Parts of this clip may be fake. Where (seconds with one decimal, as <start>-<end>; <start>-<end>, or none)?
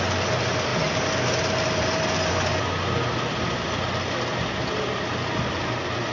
none